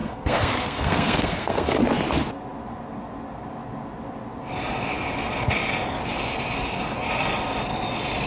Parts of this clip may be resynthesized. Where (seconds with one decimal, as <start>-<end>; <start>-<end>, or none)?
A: 0.0-1.8